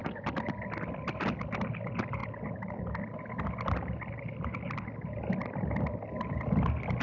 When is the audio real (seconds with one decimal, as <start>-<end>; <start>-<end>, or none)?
0.0-7.0